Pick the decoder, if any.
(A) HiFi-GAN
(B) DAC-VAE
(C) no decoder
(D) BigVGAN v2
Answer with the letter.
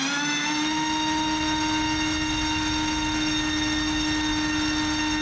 C